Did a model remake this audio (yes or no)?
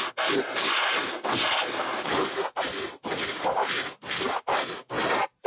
no